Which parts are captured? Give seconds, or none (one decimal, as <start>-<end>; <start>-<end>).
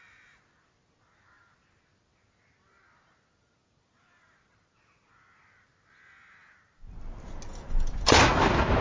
0.0-8.8